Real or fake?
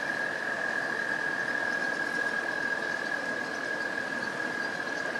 real